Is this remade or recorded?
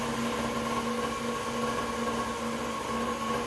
recorded